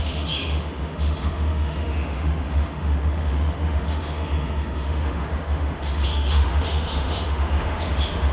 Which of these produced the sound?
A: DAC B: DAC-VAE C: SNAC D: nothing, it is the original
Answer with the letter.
B